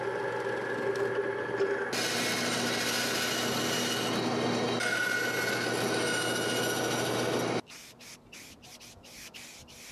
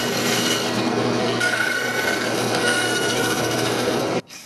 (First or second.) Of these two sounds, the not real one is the second